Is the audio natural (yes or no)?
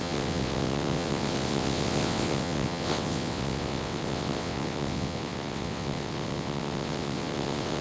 no